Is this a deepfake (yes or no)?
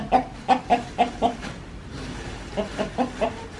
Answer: no